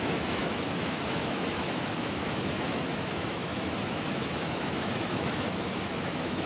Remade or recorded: remade